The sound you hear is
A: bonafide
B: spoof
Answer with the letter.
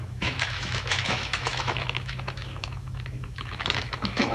B